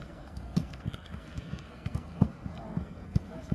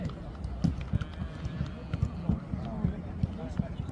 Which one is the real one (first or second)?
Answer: second